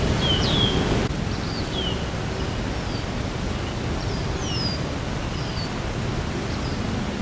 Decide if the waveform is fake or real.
real